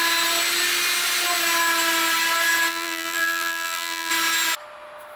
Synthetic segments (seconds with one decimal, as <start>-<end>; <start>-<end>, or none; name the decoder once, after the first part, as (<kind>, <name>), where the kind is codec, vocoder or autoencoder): 2.7-4.1 (vocoder, BigVGAN v2)